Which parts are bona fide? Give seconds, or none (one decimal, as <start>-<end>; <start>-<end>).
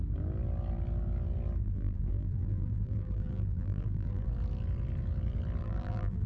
0.0-1.6; 4.3-5.6